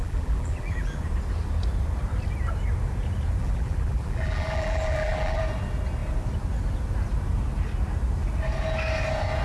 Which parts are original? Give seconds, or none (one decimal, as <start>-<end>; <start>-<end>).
1.0-3.4; 5.4-9.4